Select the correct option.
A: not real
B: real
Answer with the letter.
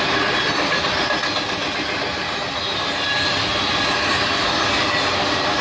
B